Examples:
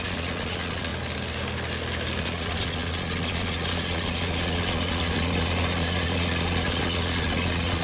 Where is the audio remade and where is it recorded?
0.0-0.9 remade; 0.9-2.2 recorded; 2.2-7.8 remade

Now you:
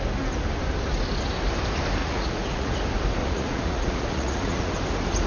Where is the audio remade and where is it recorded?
0.0-2.0 recorded; 2.0-2.7 remade; 2.7-3.2 recorded; 3.2-4.7 remade; 4.7-5.3 recorded

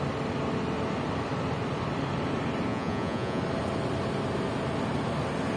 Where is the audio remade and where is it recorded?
0.0-2.7 recorded; 2.7-3.4 remade; 3.4-5.6 recorded

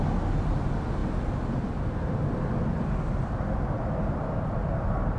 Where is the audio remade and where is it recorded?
0.0-5.2 recorded

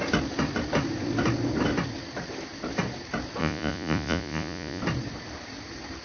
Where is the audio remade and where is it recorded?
0.0-3.4 recorded; 3.4-4.8 remade; 4.8-6.0 recorded

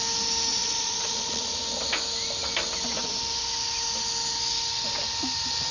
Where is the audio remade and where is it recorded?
0.0-0.5 recorded; 0.5-1.6 remade; 1.6-5.7 recorded